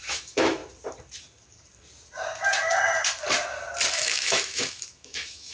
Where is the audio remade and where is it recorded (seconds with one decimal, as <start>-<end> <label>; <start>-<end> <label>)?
0.0-0.6 remade; 0.6-3.9 recorded; 3.9-5.5 remade